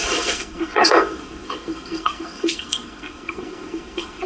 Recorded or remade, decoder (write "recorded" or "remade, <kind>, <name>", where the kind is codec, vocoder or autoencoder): remade, codec, SNAC